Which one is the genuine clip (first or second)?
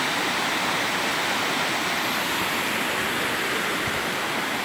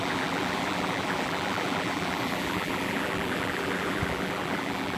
first